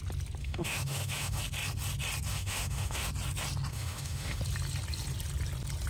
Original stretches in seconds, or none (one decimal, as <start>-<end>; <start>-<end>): 0.0-0.4; 1.4-2.3; 3.1-3.7; 4.4-5.9